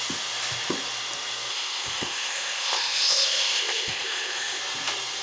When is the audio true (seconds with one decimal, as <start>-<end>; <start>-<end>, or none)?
0.0-1.5; 4.6-5.2